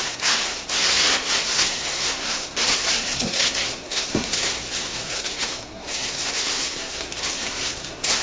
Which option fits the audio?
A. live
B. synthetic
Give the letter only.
B